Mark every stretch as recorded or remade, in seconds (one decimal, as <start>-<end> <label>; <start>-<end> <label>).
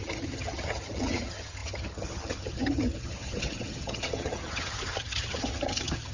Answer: 0.0-6.1 remade